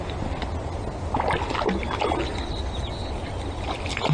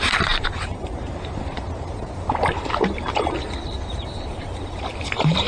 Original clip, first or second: first